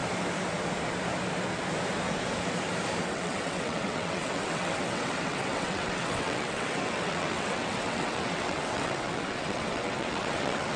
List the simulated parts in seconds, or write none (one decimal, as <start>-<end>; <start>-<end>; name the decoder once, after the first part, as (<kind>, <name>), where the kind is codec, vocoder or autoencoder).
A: 3.1-10.8 (vocoder, WaveNeXt)